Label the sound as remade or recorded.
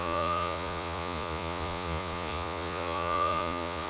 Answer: remade